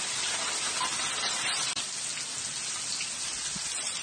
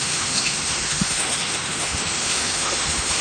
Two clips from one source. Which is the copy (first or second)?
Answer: second